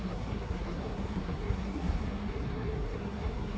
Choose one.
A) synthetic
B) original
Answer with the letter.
A